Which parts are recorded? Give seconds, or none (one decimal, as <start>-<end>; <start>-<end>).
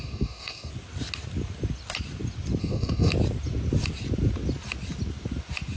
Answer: 0.7-2.6; 3.1-5.8